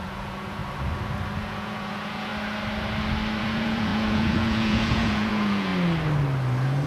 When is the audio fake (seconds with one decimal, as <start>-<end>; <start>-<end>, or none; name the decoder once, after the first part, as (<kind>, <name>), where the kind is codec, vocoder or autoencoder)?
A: 0.0-0.6 (vocoder, Vocos); 1.4-2.3; 3.4-5.7